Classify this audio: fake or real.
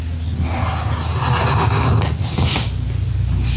real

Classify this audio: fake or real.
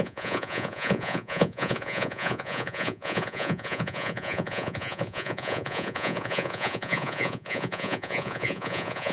fake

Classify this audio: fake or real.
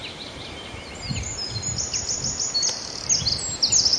real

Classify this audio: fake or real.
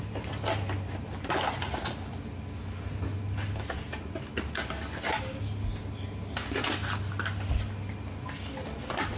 real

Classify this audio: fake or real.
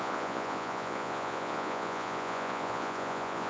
fake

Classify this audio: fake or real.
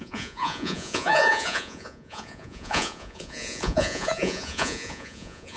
fake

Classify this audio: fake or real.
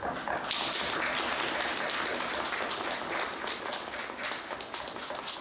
real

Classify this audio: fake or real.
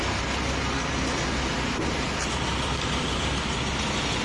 real